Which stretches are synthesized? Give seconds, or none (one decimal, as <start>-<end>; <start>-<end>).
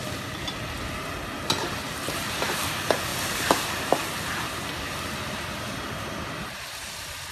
3.1-4.0